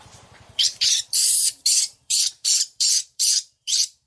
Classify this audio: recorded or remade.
remade